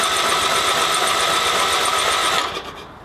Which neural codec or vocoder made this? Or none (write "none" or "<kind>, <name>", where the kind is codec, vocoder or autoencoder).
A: none